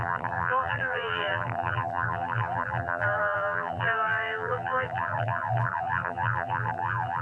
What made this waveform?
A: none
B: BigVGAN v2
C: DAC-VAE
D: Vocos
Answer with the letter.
B